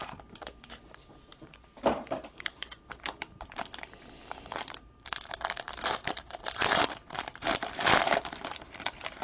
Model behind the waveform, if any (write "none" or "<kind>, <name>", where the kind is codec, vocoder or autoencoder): vocoder, BigVGAN v2